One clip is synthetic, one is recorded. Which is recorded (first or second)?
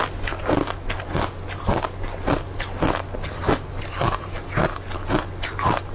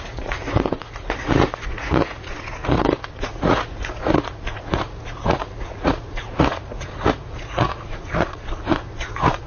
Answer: first